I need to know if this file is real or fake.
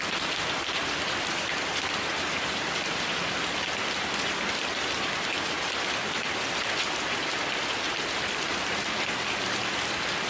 fake